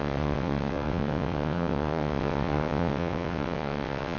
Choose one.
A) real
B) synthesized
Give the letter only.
B